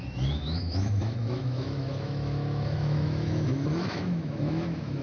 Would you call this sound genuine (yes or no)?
no